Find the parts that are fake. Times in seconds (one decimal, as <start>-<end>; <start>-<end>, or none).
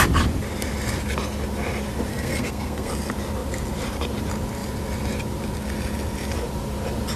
2.1-2.9